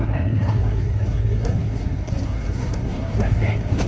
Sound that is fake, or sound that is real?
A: fake